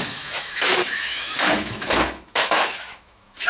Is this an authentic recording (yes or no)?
no